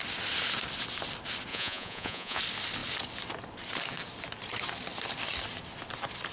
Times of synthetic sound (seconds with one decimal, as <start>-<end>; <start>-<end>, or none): 1.5-2.4